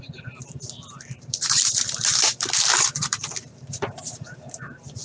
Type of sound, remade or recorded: remade